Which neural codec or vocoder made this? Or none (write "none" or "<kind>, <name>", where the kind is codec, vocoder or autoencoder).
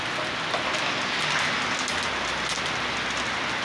none